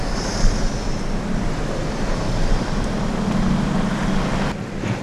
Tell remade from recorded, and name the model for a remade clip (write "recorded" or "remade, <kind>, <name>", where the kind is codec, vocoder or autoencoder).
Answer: recorded